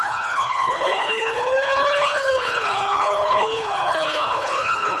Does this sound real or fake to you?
fake